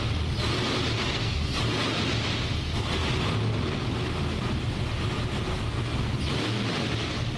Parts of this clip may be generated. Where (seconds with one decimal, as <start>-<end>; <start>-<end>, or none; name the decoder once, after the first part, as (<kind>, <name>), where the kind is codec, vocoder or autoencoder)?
1.0-1.6 (codec, SNAC); 5.5-6.2